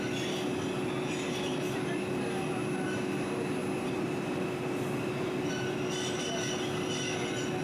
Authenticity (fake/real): real